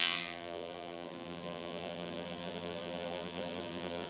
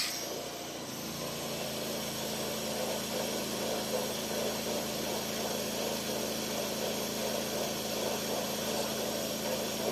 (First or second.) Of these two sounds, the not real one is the first